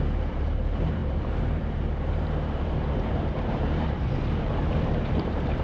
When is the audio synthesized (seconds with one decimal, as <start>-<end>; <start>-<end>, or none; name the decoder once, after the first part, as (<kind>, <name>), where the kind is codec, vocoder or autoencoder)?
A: 0.0-5.6 (vocoder, BigVGAN v2)